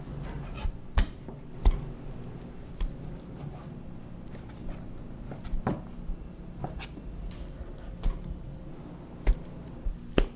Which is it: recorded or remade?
recorded